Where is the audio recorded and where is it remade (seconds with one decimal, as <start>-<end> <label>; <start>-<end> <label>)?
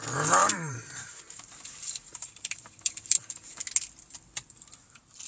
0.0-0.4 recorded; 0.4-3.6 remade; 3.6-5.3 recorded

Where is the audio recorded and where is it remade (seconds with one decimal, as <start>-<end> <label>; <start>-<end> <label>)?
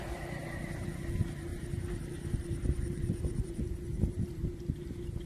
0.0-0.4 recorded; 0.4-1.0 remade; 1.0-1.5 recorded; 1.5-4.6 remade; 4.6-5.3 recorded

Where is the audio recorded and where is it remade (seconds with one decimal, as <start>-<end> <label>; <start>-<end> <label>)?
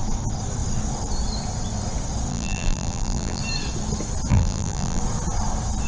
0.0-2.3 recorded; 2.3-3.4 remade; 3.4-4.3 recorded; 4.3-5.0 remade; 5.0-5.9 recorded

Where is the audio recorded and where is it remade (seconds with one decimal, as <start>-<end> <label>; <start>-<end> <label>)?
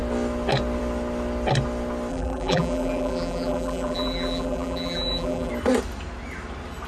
0.0-2.1 recorded; 2.1-5.5 remade; 5.5-6.9 recorded